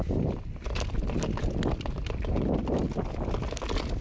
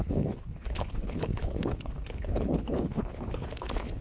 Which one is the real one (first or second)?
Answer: first